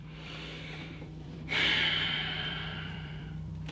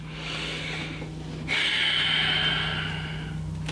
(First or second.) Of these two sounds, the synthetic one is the first